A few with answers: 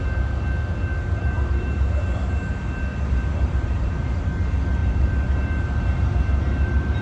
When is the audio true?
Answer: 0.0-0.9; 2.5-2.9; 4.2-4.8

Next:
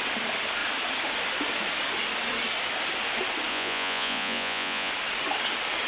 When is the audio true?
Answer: 0.0-3.5; 4.9-5.9

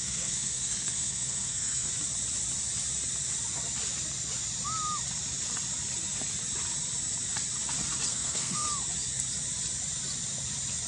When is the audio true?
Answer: 1.9-8.1; 8.7-10.9

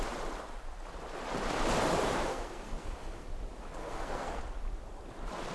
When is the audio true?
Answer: 0.0-2.3; 3.3-3.8; 4.4-5.5

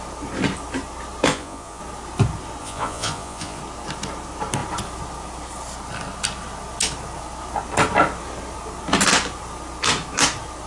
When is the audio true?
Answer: 0.0-1.3; 1.8-2.6; 3.6-10.7

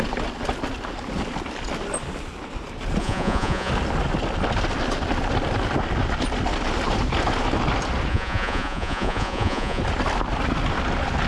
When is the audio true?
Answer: 0.0-3.0; 3.7-8.1; 9.8-11.3

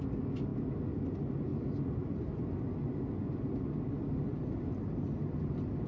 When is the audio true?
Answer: 0.0-5.9

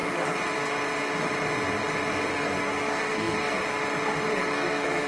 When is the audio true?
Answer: 0.0-2.3; 3.6-4.4